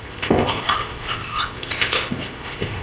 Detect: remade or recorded remade